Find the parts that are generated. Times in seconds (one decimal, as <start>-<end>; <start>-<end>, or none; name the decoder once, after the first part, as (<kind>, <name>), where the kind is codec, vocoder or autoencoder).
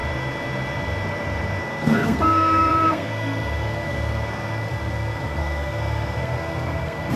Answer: 1.6-7.2 (codec, SNAC)